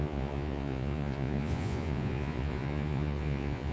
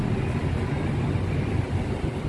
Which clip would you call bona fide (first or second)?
second